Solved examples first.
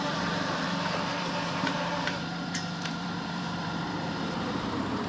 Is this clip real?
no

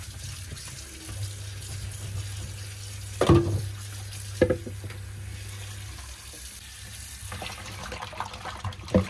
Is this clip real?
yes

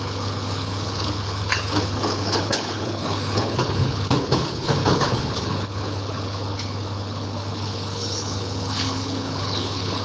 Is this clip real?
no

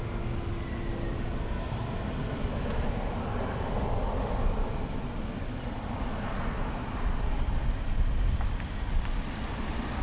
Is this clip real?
yes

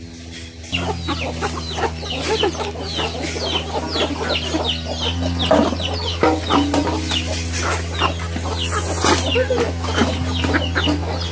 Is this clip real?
yes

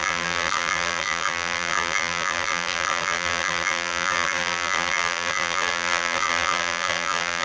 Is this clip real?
no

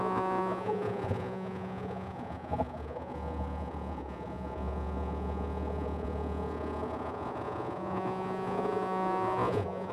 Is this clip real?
no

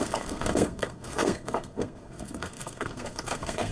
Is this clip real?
no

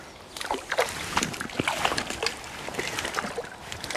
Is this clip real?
yes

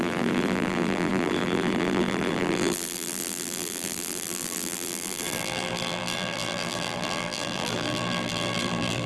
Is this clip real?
no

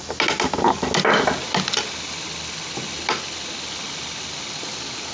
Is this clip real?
yes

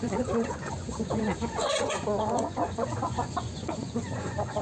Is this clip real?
no